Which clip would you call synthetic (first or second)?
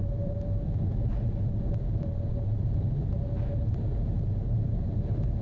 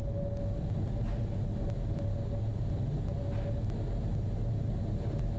first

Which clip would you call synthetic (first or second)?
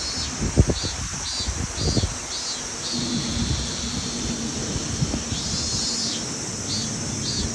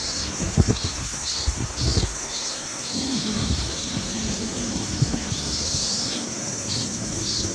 second